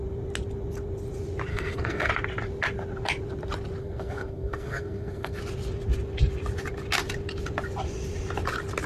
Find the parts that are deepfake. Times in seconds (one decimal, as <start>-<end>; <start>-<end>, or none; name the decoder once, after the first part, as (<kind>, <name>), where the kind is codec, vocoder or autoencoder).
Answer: 1.5-2.1 (codec, SNAC); 3.8-5.4